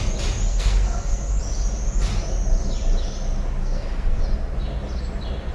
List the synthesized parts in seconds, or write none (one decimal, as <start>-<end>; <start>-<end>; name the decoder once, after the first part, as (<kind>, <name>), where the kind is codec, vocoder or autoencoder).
0.5-1.4 (codec, SNAC); 3.6-4.2